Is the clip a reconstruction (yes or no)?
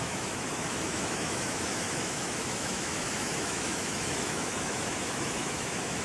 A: yes